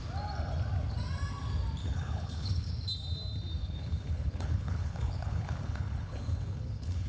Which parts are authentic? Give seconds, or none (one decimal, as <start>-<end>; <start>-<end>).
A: 0.0-1.8; 2.7-3.6